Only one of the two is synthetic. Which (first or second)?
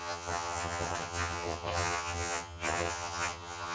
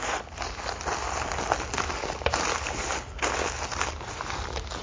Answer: first